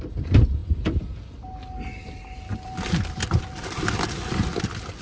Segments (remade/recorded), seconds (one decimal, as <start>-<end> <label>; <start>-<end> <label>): 0.0-5.0 recorded